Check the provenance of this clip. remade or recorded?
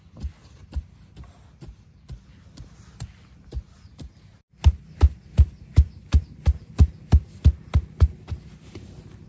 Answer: recorded